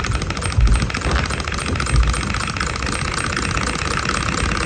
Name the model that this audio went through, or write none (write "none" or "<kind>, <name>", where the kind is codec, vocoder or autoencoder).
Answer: none